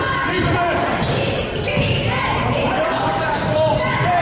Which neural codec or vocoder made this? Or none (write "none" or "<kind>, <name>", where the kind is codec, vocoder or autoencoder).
none